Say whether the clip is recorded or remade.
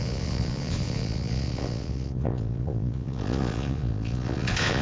remade